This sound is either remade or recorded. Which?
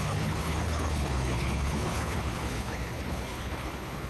remade